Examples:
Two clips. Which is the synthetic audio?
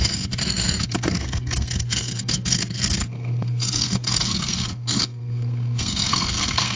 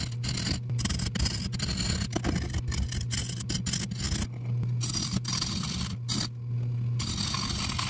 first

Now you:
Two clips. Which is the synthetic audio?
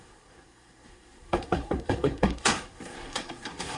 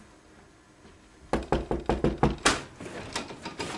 first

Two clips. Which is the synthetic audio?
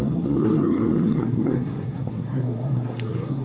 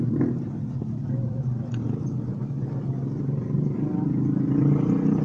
first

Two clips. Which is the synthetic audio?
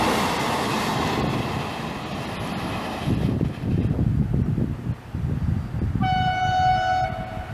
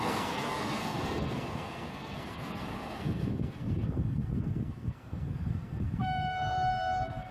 second